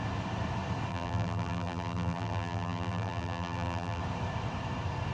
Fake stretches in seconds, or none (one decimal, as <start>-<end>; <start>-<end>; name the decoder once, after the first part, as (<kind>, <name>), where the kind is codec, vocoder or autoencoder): 0.9-4.0 (vocoder, BigVGAN v2)